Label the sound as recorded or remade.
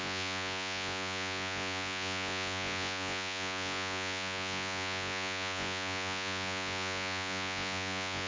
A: remade